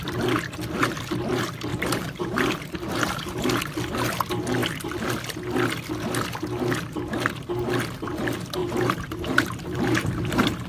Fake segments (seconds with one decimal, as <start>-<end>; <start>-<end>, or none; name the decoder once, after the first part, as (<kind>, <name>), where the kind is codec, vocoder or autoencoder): 1.7-3.6 (vocoder, BigVGAN v2); 8.6-10.7